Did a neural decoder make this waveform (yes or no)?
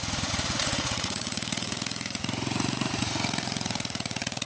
yes